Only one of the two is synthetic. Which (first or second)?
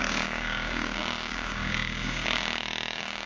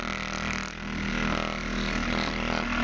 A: first